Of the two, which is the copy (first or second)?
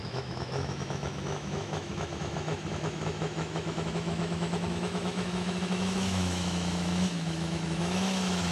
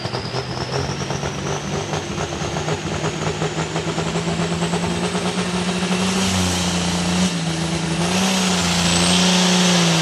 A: first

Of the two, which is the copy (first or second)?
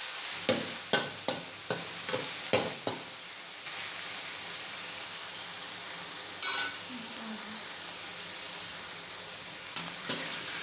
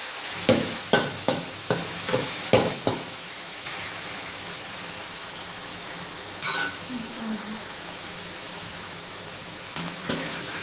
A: second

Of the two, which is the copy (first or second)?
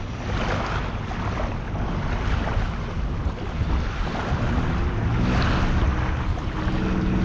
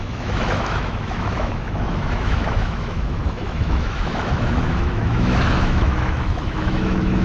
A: second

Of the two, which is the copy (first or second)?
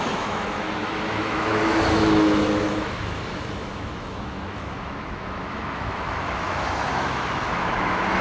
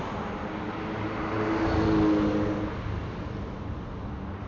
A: first